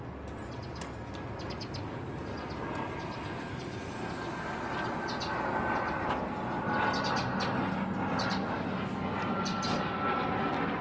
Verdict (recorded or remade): recorded